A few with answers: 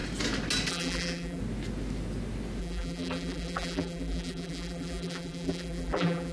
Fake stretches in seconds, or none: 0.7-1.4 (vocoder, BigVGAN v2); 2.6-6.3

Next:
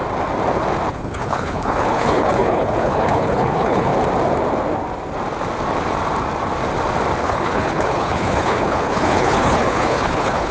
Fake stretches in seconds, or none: 0.9-3.9 (codec, HILCodec); 7.2-10.5

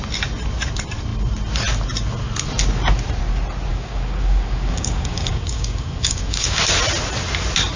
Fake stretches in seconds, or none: 3.7-6.6 (codec, DAC)

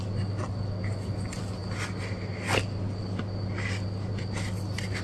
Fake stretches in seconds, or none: none

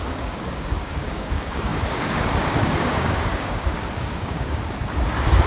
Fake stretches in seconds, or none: 0.0-5.5 (codec, DAC)